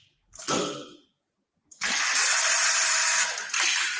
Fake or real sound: real